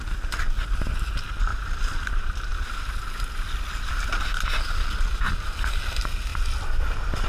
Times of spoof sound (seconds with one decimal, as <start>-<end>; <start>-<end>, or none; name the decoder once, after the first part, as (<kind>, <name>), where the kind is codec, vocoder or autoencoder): none